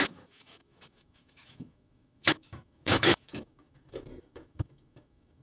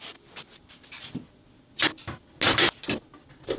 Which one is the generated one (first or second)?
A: first